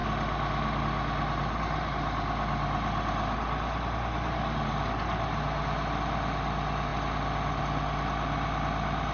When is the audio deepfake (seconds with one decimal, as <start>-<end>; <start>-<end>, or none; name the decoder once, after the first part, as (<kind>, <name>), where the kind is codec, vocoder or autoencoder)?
none